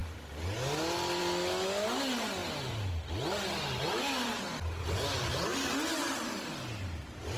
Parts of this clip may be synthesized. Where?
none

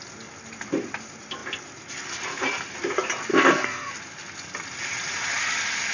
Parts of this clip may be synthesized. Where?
3.3-3.9 (codec, SNAC)

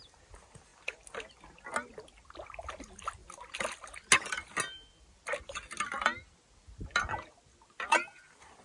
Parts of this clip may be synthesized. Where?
none